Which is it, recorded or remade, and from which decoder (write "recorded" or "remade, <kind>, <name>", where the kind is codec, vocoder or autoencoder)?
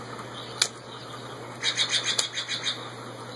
recorded